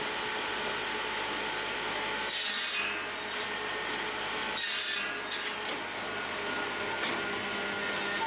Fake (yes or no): no